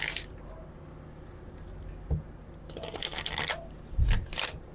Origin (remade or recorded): recorded